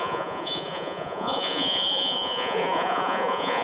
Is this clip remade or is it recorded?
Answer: remade